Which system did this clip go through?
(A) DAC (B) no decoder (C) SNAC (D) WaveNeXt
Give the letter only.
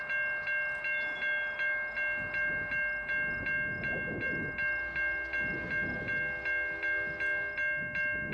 B